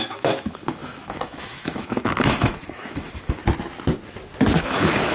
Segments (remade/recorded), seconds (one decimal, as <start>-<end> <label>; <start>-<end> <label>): 0.0-3.4 remade; 3.4-4.6 recorded; 4.6-5.1 remade